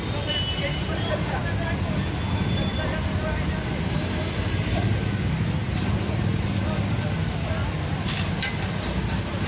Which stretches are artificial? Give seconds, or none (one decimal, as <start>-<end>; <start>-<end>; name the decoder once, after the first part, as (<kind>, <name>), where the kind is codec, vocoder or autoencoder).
none